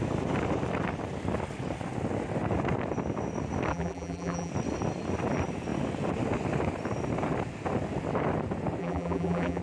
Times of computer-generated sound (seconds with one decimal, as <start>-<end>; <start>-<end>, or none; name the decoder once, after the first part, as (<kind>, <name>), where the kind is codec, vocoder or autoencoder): 3.7-4.5 (vocoder, BigVGAN v2); 8.8-9.6